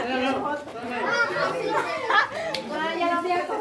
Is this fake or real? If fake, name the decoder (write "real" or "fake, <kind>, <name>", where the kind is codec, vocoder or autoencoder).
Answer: real